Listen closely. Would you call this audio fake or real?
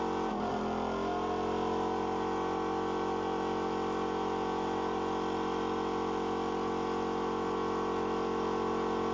real